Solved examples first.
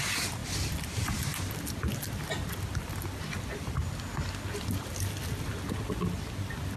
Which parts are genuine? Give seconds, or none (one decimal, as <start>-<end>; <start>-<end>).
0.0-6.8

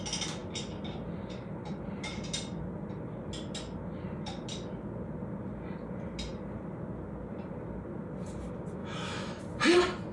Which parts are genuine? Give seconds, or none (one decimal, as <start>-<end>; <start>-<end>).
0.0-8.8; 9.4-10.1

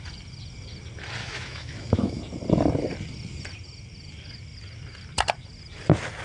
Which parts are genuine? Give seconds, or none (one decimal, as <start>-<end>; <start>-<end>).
0.0-1.2; 2.2-6.2